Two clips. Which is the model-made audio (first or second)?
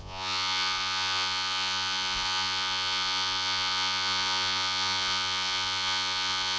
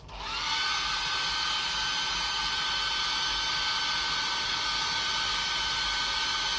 first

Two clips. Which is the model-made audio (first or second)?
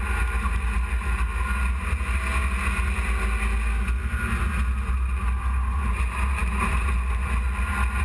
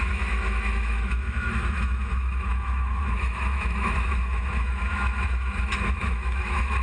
second